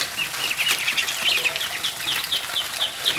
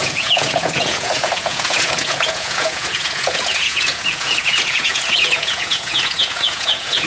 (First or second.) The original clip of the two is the first